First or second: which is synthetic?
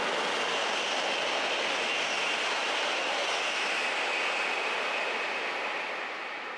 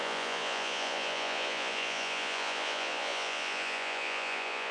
second